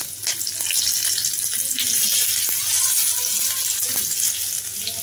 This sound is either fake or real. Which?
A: real